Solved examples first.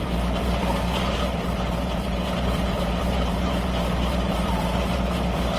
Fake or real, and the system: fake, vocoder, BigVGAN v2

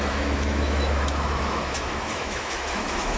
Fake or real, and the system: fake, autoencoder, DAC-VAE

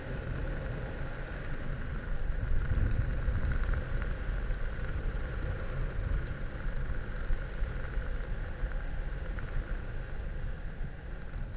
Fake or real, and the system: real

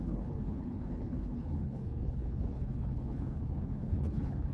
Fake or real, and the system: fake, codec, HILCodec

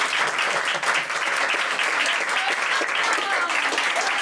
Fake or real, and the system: real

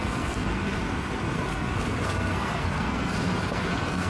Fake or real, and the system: fake, codec, SNAC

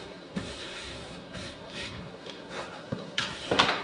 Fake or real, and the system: fake, codec, SNAC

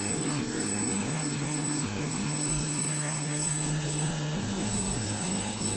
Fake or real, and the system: fake, codec, SNAC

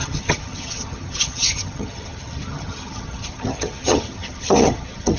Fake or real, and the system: fake, vocoder, HiFi-GAN